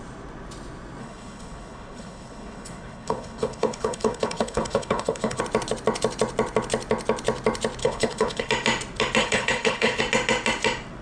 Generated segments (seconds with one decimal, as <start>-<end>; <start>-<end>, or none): 1.0-5.4; 7.8-8.5; 9.2-10.0